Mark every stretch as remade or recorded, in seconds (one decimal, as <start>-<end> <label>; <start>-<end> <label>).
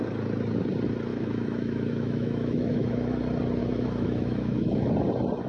0.0-1.1 recorded; 1.1-3.2 remade; 3.2-3.6 recorded; 3.6-4.9 remade; 4.9-5.5 recorded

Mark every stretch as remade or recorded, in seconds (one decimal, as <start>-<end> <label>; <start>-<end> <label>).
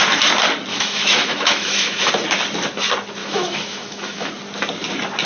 0.0-0.7 recorded; 0.7-2.1 remade; 2.1-3.2 recorded; 3.2-4.3 remade; 4.3-5.2 recorded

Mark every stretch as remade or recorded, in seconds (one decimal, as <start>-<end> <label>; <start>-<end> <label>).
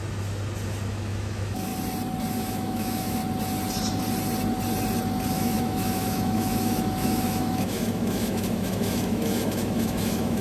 0.0-0.9 recorded; 0.9-1.7 remade; 1.7-2.3 recorded; 2.3-3.2 remade; 3.2-5.3 recorded; 5.3-10.4 remade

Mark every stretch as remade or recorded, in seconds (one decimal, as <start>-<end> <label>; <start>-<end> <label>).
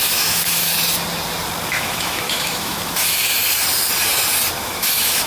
0.0-0.7 remade; 0.7-1.7 recorded; 1.7-3.4 remade; 3.4-4.6 recorded; 4.6-5.3 remade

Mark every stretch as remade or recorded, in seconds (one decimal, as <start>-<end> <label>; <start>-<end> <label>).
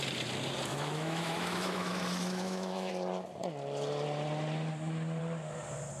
0.0-0.7 recorded; 0.7-2.9 remade; 2.9-6.0 recorded